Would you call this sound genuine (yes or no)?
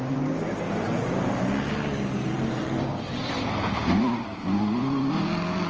yes